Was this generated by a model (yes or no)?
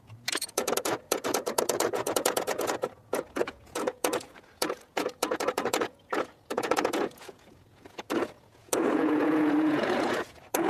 yes